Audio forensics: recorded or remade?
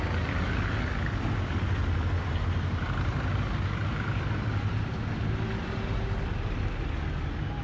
recorded